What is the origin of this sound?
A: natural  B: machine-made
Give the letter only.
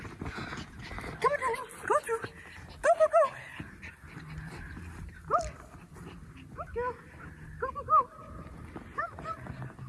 A